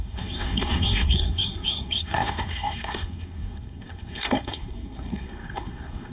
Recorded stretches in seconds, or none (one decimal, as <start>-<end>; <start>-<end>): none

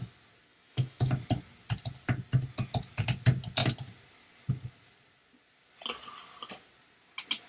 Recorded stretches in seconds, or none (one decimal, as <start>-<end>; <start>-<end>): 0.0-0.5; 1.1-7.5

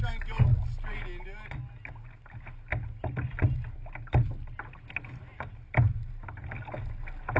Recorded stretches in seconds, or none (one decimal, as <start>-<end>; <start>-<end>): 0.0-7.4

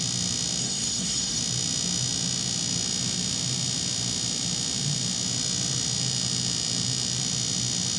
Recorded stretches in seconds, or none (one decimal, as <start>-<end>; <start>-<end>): 0.0-0.6; 1.4-8.0

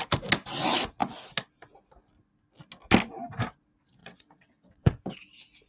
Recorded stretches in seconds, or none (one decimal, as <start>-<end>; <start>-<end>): 0.0-4.0; 5.0-5.7

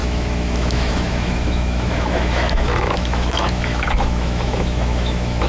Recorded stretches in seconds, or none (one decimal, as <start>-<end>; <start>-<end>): none

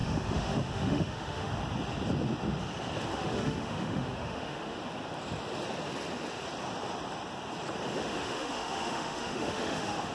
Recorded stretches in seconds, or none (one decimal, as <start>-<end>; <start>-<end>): 1.5-3.1; 4.8-8.0

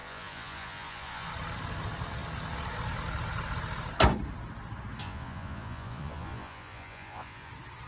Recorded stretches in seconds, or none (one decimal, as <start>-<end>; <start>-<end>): 1.3-5.0; 7.5-7.9